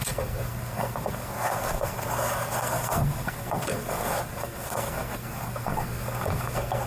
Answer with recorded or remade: remade